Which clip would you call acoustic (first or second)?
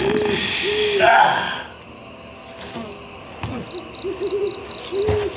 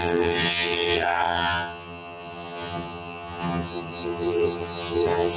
first